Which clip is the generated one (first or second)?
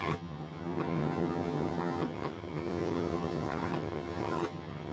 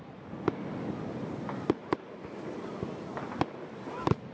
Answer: first